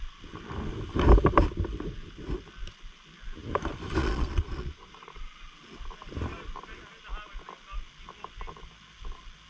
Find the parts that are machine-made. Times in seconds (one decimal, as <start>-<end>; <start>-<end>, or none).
4.0-5.1